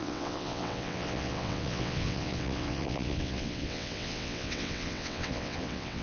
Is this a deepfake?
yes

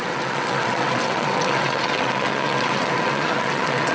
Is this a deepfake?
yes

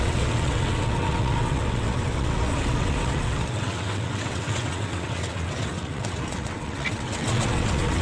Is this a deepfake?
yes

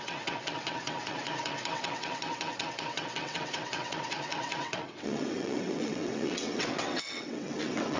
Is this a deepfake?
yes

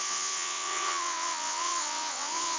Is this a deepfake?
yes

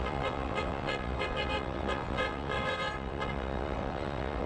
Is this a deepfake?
yes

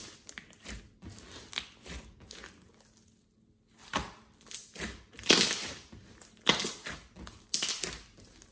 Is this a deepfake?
no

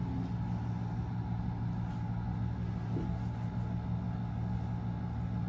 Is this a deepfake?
no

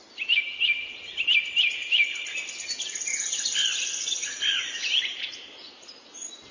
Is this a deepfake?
no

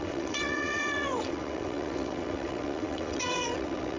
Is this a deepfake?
yes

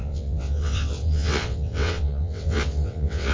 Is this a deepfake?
yes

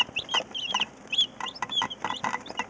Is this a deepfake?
no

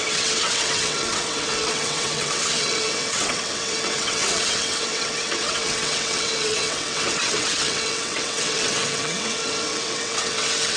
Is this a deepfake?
yes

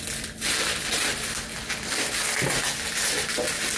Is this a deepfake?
no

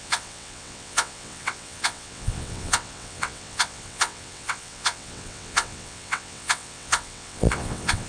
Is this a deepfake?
yes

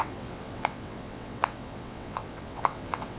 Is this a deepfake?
yes